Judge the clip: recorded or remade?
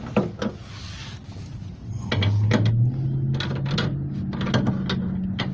recorded